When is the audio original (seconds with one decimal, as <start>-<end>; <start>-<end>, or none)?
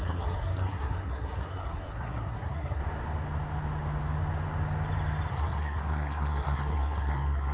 2.8-5.3